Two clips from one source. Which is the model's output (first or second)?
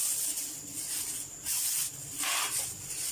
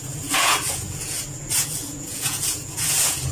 second